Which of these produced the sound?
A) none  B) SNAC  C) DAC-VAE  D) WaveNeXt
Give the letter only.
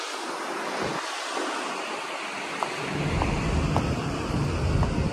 A